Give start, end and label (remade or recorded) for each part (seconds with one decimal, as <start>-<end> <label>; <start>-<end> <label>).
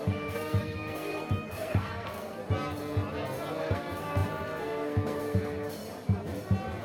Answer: 0.0-2.4 remade; 2.4-3.6 recorded; 3.6-5.8 remade; 5.8-6.8 recorded